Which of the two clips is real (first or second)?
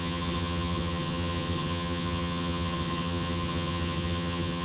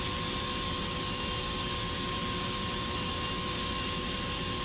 second